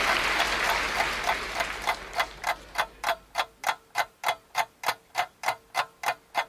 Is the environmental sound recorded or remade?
recorded